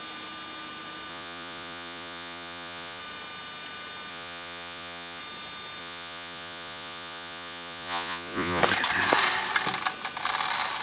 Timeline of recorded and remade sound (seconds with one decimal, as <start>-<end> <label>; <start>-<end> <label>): 0.0-1.1 recorded; 1.1-3.0 remade; 3.0-4.1 recorded; 4.1-5.2 remade; 5.2-5.8 recorded; 5.8-8.6 remade; 8.6-10.8 recorded